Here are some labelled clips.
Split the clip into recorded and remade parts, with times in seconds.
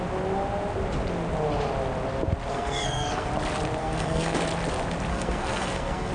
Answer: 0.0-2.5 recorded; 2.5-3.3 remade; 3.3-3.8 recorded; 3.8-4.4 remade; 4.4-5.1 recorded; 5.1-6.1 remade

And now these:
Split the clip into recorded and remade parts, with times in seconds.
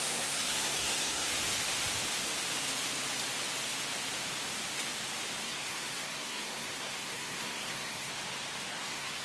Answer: 0.0-1.3 remade; 1.3-5.4 recorded; 5.4-8.1 remade; 8.1-8.7 recorded; 8.7-9.2 remade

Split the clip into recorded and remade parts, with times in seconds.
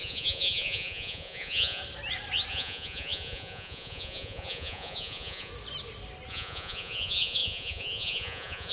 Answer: 0.0-1.8 remade; 1.8-2.5 recorded; 2.5-5.5 remade; 5.5-6.3 recorded; 6.3-8.7 remade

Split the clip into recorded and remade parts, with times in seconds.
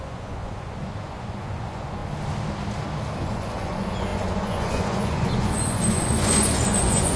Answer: 0.0-2.0 remade; 2.0-3.2 recorded; 3.2-7.2 remade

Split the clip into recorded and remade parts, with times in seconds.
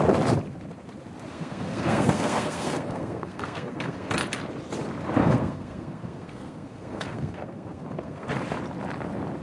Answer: 0.0-1.3 recorded; 1.3-4.1 remade; 4.1-5.2 recorded; 5.2-8.3 remade; 8.3-9.4 recorded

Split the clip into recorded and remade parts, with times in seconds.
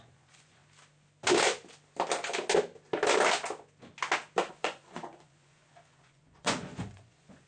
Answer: 0.0-0.6 remade; 0.6-4.5 recorded; 4.5-7.5 remade